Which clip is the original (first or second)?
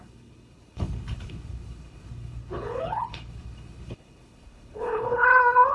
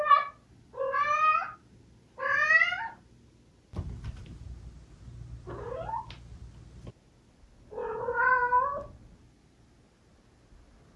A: second